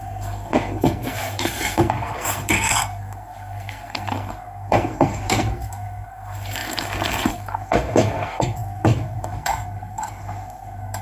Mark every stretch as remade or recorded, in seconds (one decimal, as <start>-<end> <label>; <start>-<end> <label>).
0.0-11.0 remade